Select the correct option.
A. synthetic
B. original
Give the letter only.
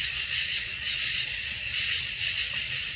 A